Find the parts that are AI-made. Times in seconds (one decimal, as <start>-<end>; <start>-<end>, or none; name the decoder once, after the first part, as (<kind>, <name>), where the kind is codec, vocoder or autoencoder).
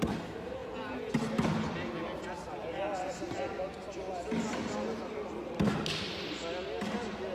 0.6-1.1 (vocoder, Vocos)